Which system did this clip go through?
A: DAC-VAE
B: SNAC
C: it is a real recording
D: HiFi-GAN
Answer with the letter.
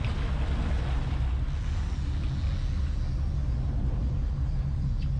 C